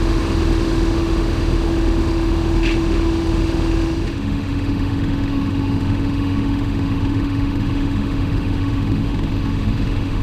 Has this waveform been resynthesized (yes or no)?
yes